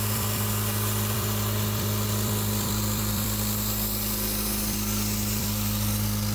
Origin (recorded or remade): remade